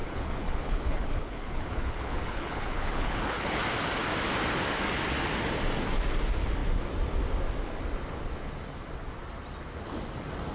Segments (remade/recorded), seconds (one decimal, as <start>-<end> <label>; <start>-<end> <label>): 0.0-3.6 remade; 3.6-10.5 recorded